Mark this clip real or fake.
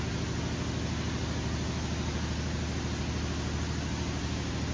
real